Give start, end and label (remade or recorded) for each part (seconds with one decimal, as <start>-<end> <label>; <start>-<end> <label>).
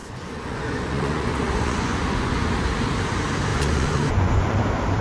0.0-2.4 remade; 2.4-3.5 recorded; 3.5-4.6 remade; 4.6-5.0 recorded